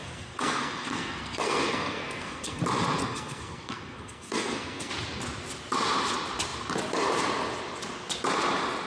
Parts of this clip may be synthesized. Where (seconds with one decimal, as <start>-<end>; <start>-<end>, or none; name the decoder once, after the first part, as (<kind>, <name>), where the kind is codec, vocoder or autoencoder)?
0.0-2.6 (codec, SNAC); 3.0-4.9